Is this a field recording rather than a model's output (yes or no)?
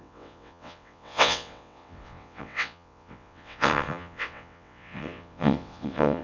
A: no